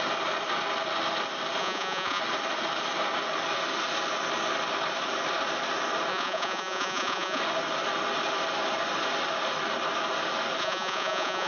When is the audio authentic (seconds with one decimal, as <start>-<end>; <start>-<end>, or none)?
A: 0.0-1.6; 2.2-6.1; 7.4-10.6